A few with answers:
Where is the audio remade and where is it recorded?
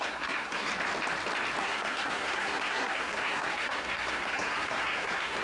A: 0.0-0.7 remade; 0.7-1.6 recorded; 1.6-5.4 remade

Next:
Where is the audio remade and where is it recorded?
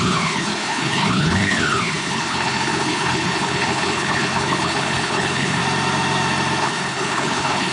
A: 0.0-5.6 remade; 5.6-6.6 recorded; 6.6-7.7 remade